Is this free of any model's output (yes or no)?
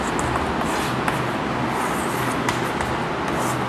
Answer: yes